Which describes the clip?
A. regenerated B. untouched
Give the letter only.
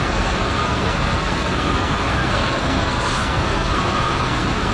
A